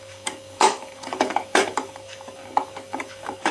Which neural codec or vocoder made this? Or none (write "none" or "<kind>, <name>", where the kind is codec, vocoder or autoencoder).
codec, DAC